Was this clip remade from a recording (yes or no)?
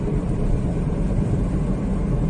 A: no